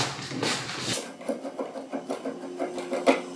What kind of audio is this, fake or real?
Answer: real